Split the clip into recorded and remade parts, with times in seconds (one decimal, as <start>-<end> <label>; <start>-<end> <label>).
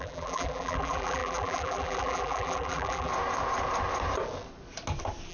0.0-3.1 remade; 3.1-5.3 recorded